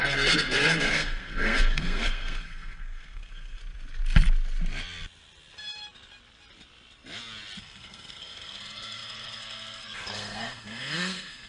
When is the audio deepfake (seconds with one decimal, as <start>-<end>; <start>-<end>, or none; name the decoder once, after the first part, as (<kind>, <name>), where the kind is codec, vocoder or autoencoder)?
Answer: 0.0-3.6 (codec, SNAC); 7.6-11.5